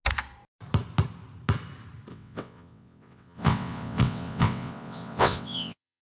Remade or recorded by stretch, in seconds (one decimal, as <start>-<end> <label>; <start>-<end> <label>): 0.0-2.1 recorded; 2.1-6.0 remade